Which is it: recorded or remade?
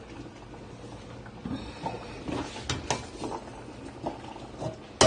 recorded